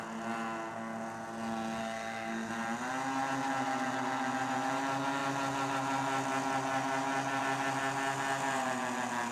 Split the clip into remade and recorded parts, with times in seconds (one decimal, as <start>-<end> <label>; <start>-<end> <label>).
0.0-1.8 recorded; 1.8-2.5 remade; 2.5-9.3 recorded